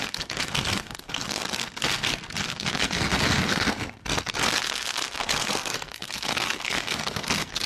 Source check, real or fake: fake